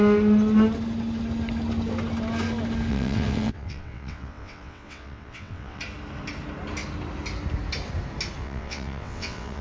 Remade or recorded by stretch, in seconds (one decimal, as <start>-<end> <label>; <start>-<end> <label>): 0.0-2.9 recorded; 2.9-5.8 remade; 5.8-8.4 recorded; 8.4-9.6 remade

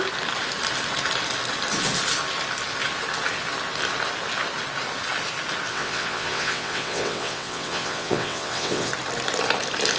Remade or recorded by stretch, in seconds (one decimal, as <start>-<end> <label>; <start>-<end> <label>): 0.0-5.7 recorded; 5.7-8.9 remade; 8.9-10.0 recorded

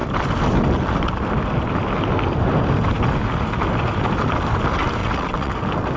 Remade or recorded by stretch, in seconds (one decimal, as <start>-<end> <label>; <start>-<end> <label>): 0.0-5.0 recorded; 5.0-5.5 remade; 5.5-6.0 recorded

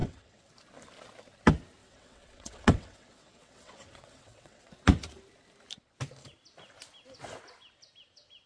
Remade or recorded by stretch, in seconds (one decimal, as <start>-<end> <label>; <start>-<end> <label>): 0.0-0.5 remade; 0.5-1.8 recorded; 1.8-4.7 remade; 4.7-8.5 recorded

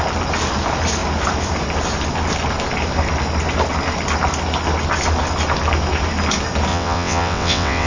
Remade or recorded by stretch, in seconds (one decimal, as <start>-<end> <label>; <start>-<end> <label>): 0.0-6.7 recorded; 6.7-7.9 remade

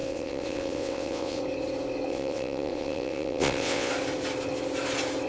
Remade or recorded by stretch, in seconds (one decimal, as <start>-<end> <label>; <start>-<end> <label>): 0.0-1.4 remade; 1.4-2.1 recorded; 2.1-3.9 remade; 3.9-5.3 recorded

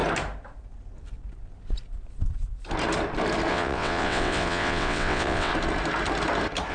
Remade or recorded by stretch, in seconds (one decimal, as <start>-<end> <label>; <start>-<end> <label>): 0.0-3.5 recorded; 3.5-5.5 remade; 5.5-6.7 recorded